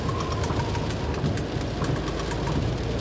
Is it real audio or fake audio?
real